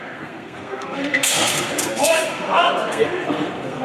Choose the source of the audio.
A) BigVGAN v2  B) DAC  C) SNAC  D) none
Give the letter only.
C